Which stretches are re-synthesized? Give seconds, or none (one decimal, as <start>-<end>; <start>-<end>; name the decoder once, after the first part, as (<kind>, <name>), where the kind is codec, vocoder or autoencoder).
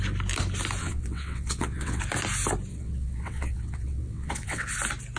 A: 0.8-2.0 (vocoder, WaveNeXt); 2.7-4.7